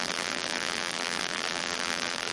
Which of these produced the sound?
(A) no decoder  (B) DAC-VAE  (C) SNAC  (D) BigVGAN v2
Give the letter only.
D